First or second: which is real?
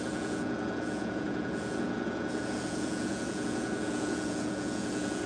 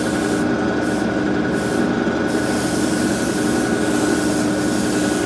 second